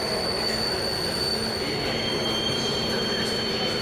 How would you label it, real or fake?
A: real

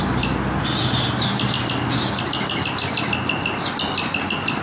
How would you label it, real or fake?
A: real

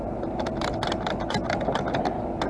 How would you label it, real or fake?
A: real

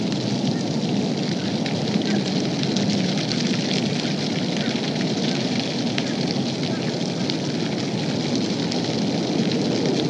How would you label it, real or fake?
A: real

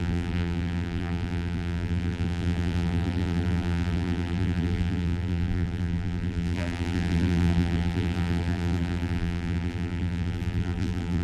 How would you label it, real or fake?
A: fake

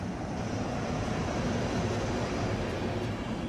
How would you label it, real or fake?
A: real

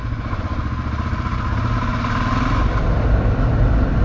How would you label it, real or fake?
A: real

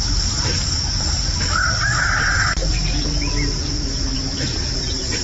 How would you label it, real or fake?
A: real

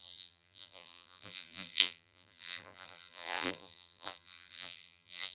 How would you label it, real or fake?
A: fake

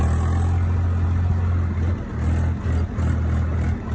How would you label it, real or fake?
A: real